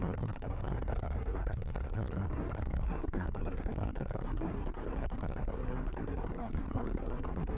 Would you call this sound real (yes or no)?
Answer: no